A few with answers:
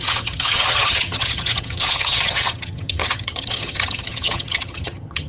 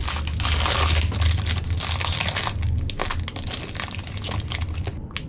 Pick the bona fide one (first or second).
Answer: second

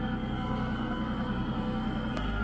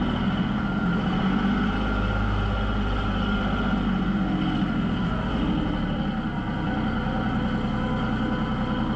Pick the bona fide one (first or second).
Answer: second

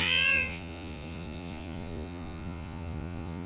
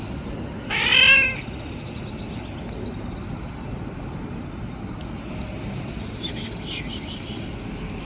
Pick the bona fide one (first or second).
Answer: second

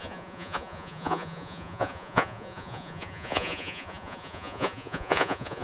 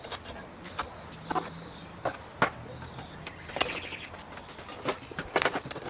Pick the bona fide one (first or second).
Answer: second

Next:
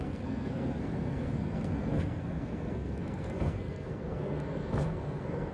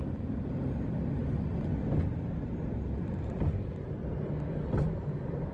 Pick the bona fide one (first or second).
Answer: second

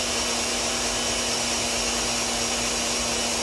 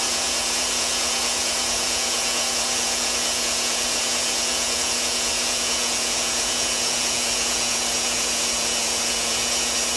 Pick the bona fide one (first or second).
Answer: first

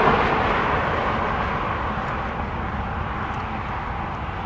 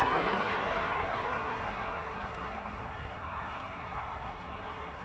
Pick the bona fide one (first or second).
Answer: first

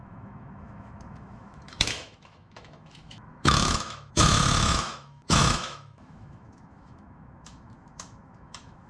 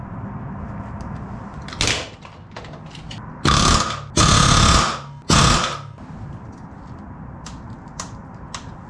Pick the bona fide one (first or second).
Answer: second